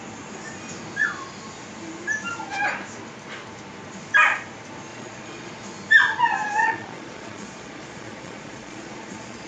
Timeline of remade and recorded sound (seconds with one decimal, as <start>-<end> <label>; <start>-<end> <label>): 0.0-4.9 recorded; 4.9-5.5 remade; 5.5-6.6 recorded; 6.6-9.5 remade